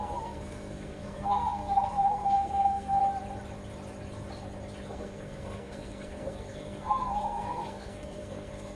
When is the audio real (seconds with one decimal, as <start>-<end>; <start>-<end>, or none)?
3.0-4.9